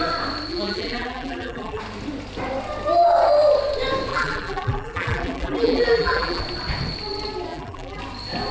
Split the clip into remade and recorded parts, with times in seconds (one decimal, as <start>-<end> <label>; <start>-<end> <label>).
0.0-0.5 recorded; 0.5-1.8 remade; 1.8-4.1 recorded; 4.1-6.4 remade; 6.4-7.5 recorded; 7.5-8.0 remade; 8.0-8.5 recorded